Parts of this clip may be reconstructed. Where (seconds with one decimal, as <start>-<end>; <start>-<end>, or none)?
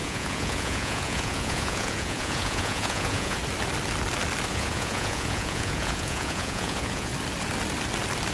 0.0-3.4; 4.5-7.1